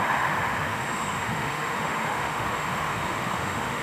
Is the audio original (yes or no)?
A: no